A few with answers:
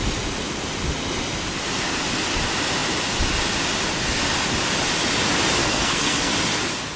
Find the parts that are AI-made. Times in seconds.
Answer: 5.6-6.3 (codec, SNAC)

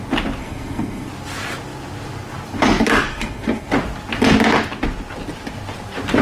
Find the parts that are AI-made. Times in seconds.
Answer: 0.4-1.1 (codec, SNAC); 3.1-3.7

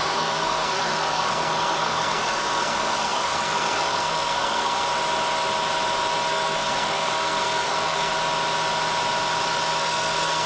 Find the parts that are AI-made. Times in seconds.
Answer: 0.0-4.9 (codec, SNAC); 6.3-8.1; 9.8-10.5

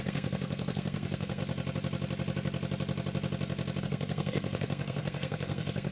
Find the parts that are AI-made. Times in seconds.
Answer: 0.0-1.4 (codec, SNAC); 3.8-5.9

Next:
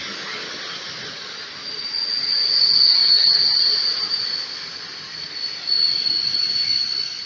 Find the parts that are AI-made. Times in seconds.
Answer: none

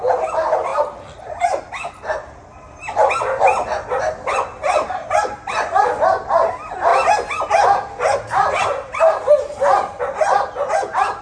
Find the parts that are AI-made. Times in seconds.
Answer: none